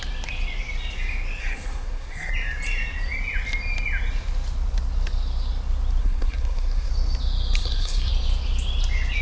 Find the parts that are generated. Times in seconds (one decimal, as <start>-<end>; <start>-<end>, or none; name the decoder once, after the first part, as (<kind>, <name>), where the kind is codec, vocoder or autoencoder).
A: 1.4-2.3 (codec, SNAC); 6.0-6.9; 7.6-8.1